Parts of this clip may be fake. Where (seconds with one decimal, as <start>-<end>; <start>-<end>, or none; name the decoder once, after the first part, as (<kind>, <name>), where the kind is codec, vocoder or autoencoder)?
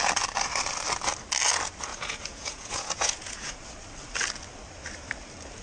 1.9-3.5 (vocoder, Vocos)